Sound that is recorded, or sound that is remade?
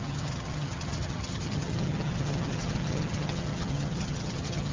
remade